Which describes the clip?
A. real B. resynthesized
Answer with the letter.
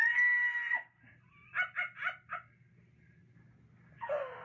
A